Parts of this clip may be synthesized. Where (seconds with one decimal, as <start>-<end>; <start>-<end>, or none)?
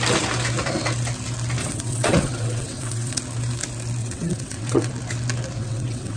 1.6-3.2; 4.0-4.9; 5.6-6.2